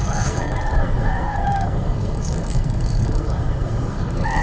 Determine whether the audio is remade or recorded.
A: remade